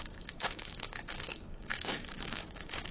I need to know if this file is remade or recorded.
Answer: remade